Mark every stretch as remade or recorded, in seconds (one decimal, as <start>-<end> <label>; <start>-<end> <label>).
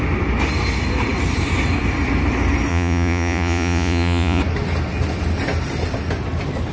0.0-2.7 recorded; 2.7-4.4 remade; 4.4-6.7 recorded